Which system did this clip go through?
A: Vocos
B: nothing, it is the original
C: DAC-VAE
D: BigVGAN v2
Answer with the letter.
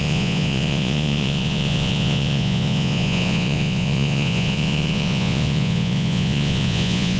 A